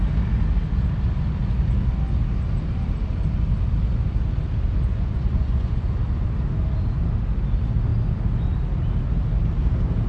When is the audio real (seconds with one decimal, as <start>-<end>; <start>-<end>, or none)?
0.0-4.9; 5.9-10.1